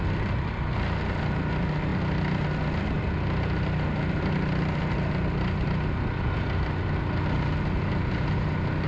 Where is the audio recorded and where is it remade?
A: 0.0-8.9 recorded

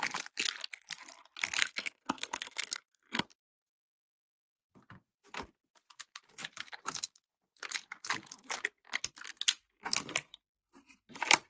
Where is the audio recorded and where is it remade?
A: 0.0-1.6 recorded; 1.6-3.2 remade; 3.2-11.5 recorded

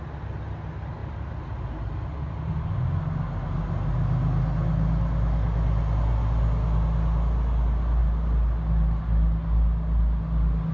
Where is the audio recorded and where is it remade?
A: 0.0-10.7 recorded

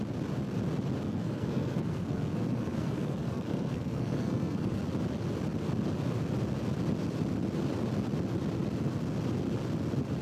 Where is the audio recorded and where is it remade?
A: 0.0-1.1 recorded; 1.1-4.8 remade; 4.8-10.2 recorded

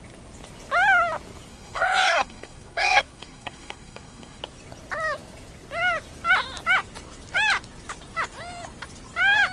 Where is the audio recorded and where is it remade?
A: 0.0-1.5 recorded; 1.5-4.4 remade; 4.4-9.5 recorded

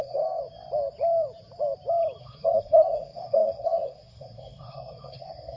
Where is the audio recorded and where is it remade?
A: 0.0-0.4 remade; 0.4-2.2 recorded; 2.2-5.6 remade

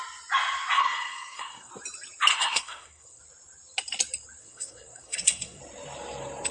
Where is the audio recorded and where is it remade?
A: 0.0-0.8 recorded; 0.8-1.7 remade; 1.7-2.3 recorded; 2.3-3.2 remade; 3.2-4.4 recorded; 4.4-5.6 remade; 5.6-6.5 recorded